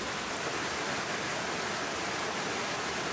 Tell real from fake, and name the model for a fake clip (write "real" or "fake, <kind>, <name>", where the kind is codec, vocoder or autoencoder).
real